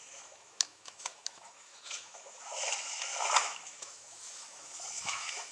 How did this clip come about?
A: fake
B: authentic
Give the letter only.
A